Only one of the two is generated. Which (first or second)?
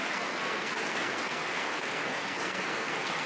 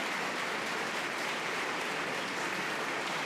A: first